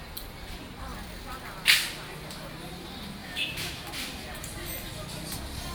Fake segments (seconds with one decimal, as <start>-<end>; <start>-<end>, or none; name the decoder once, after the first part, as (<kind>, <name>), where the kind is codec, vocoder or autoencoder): 3.2-3.9 (autoencoder, DAC-VAE)